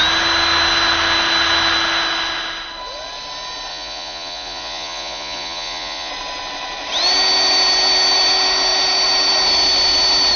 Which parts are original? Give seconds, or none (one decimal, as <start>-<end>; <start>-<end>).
0.0-3.7; 6.1-10.4

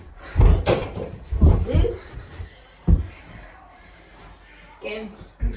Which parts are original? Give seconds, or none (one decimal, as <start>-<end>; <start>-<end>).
4.1-5.6